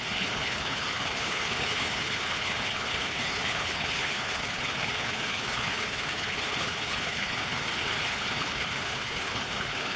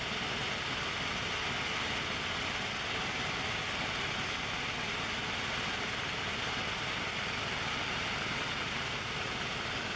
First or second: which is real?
second